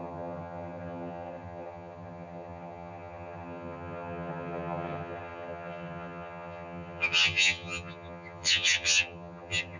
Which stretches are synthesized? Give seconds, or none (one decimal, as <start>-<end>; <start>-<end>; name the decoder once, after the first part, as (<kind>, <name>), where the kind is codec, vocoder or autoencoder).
0.0-9.8 (vocoder, HiFi-GAN)